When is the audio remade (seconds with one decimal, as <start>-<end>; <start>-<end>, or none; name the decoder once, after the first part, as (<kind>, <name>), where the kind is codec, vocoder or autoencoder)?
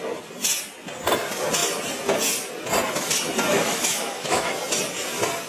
3.5-4.5 (autoencoder, DAC-VAE)